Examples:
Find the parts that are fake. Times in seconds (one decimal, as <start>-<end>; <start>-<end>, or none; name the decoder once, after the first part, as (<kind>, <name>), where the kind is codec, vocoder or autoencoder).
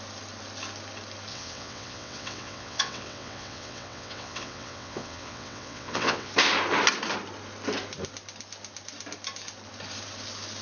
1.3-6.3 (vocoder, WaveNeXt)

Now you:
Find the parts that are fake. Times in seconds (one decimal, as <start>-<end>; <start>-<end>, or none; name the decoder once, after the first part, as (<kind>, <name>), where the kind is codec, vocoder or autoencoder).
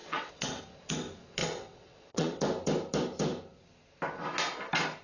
0.0-0.6 (vocoder, WaveNeXt); 1.4-2.4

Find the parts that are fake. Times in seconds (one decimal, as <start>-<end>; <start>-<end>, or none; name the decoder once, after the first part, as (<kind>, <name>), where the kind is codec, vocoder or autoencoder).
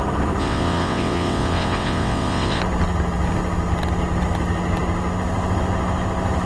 0.4-2.6 (vocoder, WaveNeXt)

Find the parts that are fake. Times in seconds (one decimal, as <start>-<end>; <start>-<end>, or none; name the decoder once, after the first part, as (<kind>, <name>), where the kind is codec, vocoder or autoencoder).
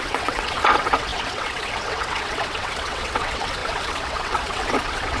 0.0-5.2 (vocoder, WaveNeXt)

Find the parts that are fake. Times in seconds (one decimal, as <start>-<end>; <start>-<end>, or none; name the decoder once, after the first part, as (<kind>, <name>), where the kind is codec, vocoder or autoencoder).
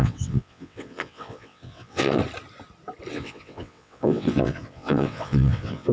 0.0-2.2 (vocoder, WaveNeXt); 3.1-5.9